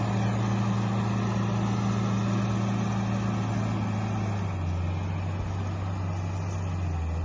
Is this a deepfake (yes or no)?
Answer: no